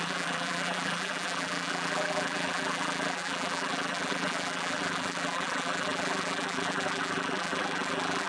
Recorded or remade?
remade